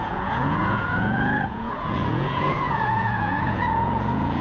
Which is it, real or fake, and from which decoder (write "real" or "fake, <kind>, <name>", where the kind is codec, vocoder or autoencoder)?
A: fake, vocoder, Vocos